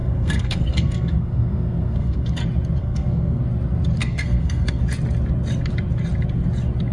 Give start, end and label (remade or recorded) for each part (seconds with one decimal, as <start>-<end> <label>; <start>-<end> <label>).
0.0-2.4 remade; 2.4-2.8 recorded; 2.8-3.4 remade; 3.4-4.0 recorded; 4.0-4.8 remade; 4.8-6.9 recorded